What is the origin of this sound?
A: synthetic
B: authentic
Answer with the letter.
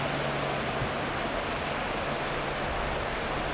B